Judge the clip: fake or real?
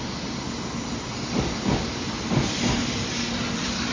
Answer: real